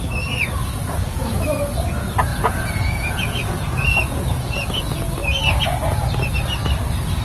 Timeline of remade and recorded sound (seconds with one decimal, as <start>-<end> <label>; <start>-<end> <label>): 0.0-0.6 recorded; 0.6-1.4 remade; 1.4-2.3 recorded; 2.3-4.8 remade; 4.8-7.2 recorded